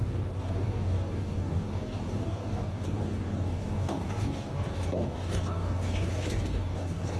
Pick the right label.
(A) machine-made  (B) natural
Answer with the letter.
A